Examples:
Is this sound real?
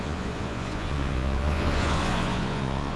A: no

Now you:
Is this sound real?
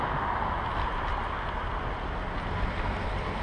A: yes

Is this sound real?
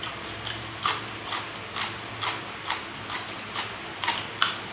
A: yes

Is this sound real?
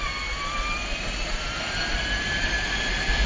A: yes